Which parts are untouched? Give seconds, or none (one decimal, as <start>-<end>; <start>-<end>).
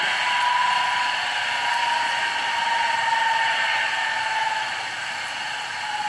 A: 0.0-4.0; 4.7-6.1